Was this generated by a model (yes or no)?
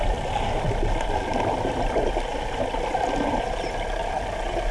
no